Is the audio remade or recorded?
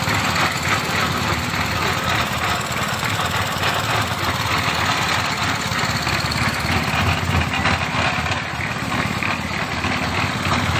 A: recorded